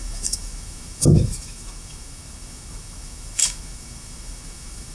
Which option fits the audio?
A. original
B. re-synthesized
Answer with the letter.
B